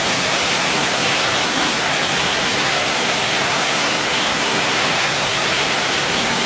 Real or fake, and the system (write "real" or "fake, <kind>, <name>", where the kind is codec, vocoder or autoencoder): fake, codec, SNAC